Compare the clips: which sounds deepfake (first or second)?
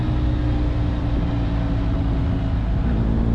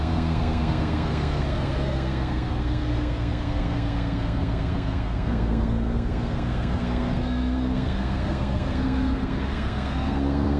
second